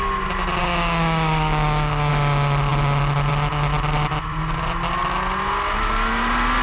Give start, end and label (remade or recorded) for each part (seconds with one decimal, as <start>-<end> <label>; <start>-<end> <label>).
0.0-0.6 recorded; 0.6-2.1 remade; 2.1-6.6 recorded